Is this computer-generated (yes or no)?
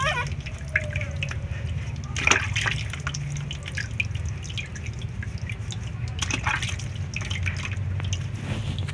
no